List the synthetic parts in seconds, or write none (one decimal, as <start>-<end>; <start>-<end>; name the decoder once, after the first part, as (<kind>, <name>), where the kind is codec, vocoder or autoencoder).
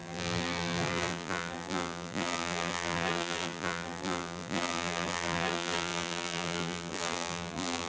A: 0.0-7.9 (vocoder, BigVGAN v2)